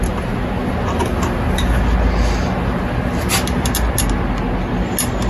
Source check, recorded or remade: recorded